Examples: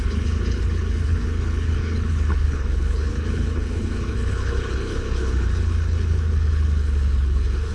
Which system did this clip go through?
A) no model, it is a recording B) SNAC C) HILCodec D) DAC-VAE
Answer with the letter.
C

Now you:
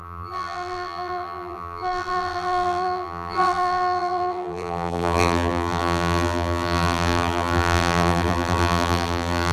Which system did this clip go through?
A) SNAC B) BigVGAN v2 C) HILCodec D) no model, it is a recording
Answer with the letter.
B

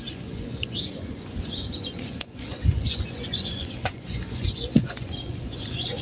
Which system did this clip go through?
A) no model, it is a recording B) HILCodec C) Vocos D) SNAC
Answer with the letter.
C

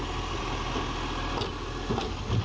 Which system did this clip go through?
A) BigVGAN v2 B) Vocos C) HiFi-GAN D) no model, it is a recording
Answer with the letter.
D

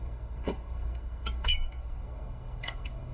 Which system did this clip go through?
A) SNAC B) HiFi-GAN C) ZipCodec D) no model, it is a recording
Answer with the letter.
A